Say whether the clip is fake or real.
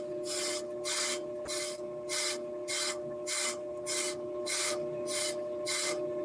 fake